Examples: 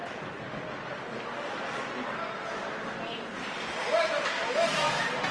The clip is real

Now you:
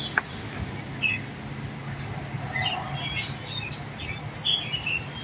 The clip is real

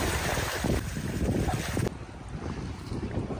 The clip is real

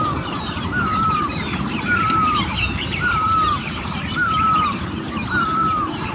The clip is fake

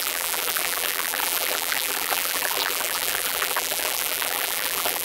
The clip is fake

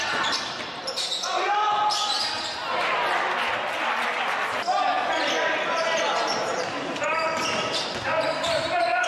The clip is real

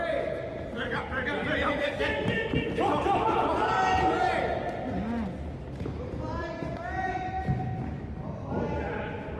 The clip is real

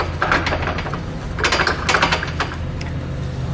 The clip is real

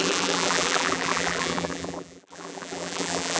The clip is fake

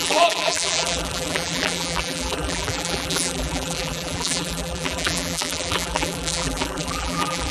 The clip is fake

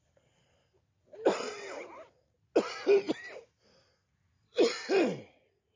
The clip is real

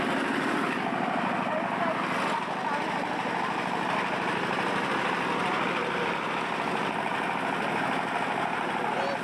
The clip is real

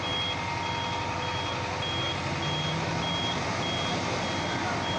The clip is real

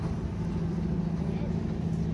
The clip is real